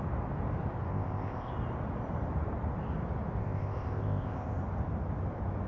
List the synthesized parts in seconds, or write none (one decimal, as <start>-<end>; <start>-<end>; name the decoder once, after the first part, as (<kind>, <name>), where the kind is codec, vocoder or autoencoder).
0.9-1.5 (codec, ZipCodec); 3.4-4.6